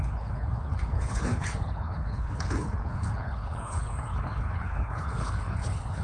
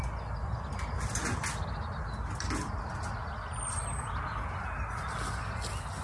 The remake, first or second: first